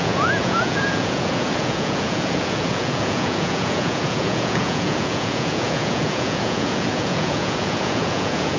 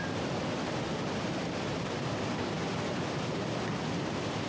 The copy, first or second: first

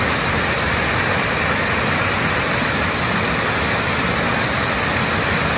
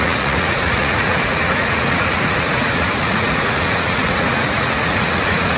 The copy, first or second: second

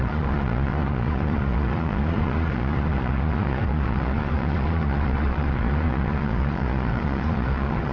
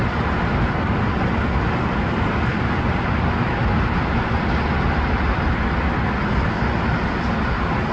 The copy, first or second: first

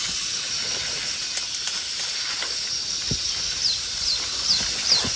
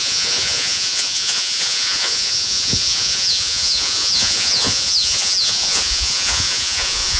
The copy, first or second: second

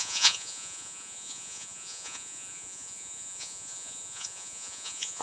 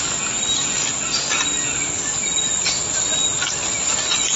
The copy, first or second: first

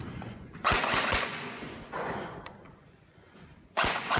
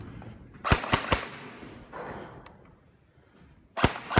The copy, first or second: first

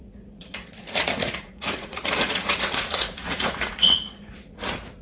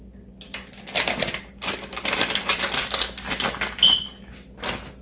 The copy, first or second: first